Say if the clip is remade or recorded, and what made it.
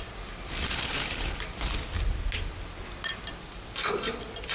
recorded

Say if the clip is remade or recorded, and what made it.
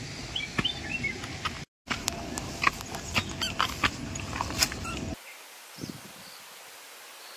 recorded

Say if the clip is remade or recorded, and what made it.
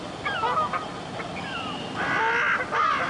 recorded